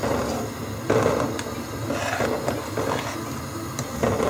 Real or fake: real